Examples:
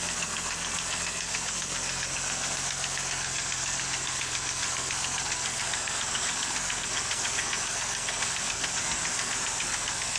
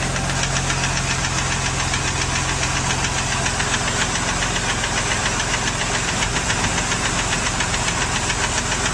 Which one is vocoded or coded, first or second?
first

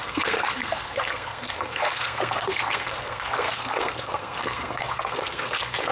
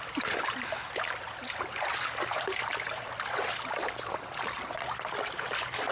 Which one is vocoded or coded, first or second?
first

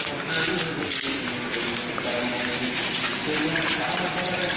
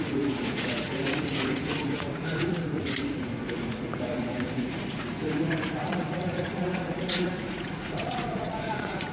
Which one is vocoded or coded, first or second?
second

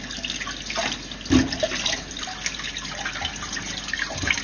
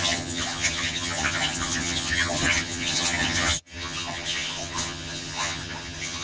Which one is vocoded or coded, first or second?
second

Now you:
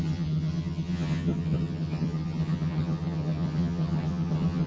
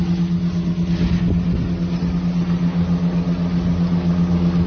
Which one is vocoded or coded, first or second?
first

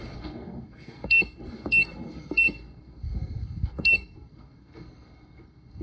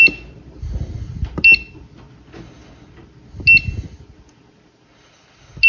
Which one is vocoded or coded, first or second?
first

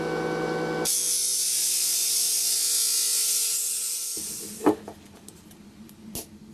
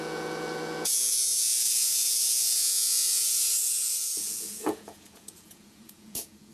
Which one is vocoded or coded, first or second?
second